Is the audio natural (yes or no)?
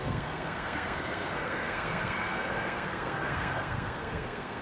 no